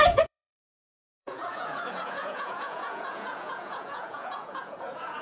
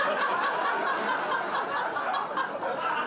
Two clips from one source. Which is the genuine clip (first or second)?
second